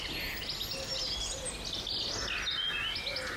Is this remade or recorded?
recorded